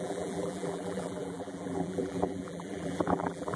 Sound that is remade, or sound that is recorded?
remade